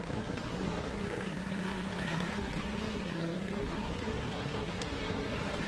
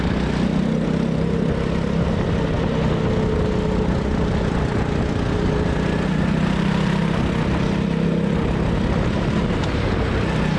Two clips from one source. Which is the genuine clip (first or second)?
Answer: second